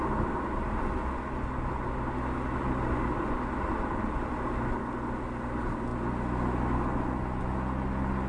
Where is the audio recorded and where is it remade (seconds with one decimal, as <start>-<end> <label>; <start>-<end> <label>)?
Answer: 0.0-8.3 recorded